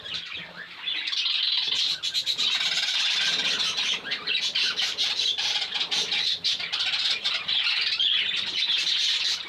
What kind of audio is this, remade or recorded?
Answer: recorded